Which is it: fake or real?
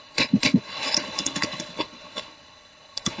fake